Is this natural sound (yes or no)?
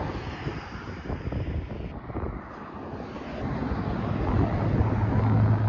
yes